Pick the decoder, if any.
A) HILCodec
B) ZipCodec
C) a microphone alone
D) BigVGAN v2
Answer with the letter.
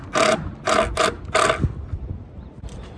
C